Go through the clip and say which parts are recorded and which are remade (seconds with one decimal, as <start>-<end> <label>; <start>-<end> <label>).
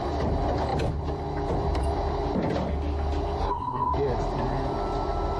0.0-3.4 recorded; 3.4-3.9 remade; 3.9-5.4 recorded